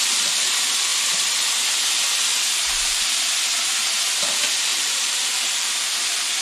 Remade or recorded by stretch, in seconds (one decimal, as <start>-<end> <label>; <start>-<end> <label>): 0.0-4.7 recorded; 4.7-5.7 remade; 5.7-6.4 recorded